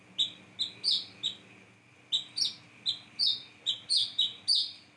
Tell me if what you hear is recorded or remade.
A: recorded